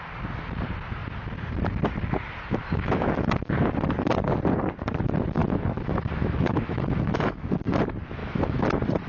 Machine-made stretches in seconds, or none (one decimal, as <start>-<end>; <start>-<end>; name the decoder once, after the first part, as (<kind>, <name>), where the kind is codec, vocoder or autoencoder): 2.6-3.2 (autoencoder, DAC-VAE); 5.4-7.5; 8.2-8.7